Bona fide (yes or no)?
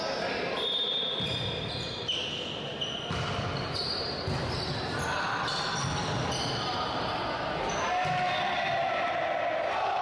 yes